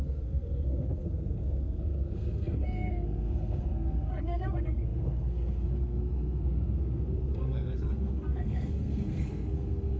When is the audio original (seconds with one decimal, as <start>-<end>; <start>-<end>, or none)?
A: none